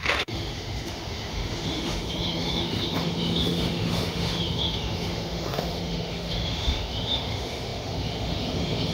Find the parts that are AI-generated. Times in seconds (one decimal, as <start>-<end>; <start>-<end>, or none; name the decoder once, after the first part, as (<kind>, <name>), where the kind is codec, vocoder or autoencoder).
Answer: 0.0-8.9 (autoencoder, DAC-VAE)